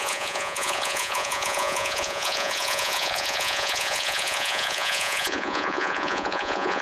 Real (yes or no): no